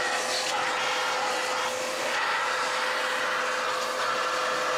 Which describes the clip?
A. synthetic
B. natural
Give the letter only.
B